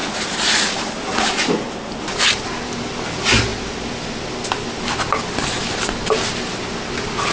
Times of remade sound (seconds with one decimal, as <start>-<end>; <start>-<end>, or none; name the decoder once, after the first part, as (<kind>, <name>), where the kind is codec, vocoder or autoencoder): none

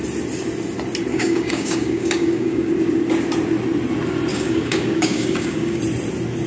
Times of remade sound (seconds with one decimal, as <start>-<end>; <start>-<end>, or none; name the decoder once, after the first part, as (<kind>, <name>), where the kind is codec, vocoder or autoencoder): 1.1-2.7 (codec, DAC); 4.3-5.8

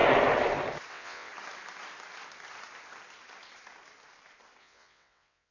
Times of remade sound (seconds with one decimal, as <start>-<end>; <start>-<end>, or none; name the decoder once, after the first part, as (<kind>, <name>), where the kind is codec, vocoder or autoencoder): 0.9-1.3 (vocoder, WaveNeXt); 4.6-5.5

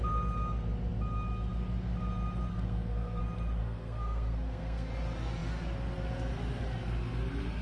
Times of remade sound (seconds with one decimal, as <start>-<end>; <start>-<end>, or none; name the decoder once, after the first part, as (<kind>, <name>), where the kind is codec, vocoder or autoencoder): 2.5-3.2 (codec, SNAC); 3.6-4.9

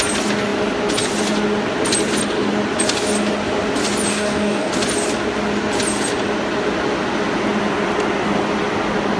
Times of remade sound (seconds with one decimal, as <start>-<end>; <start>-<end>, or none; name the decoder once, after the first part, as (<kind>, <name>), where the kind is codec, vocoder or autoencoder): 4.1-4.7 (codec, DAC)